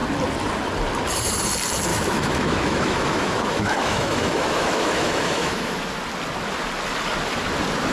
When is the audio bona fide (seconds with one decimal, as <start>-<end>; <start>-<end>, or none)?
0.0-1.9; 5.8-7.9